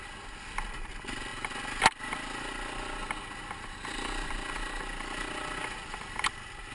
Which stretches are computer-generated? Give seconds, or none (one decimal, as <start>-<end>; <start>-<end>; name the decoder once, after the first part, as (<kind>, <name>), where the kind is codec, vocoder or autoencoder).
none